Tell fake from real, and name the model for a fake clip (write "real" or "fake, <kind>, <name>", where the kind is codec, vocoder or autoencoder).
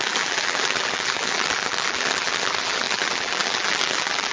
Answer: fake, vocoder, BigVGAN v2